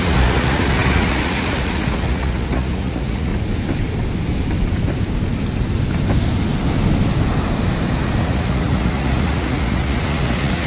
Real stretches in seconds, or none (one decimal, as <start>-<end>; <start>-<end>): 3.3-8.2